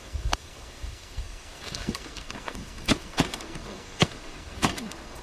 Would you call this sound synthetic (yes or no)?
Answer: yes